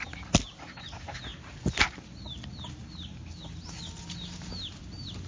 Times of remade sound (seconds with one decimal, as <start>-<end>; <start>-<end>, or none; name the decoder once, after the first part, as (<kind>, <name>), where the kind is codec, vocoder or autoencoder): none